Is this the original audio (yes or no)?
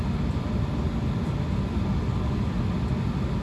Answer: yes